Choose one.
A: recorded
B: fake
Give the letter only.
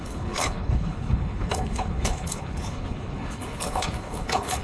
B